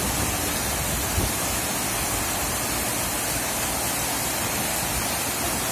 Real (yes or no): yes